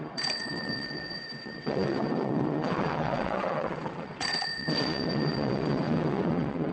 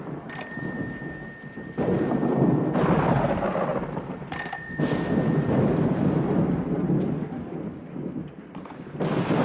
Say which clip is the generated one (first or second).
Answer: first